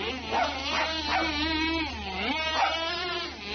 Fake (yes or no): no